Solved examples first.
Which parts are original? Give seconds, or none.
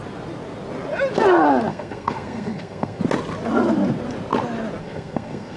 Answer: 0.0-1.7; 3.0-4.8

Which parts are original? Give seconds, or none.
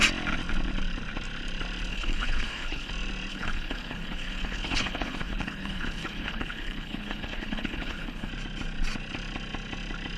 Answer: 0.0-1.9; 2.9-3.3; 8.3-10.2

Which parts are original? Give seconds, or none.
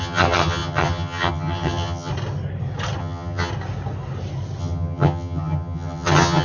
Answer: 2.1-3.0; 3.5-4.6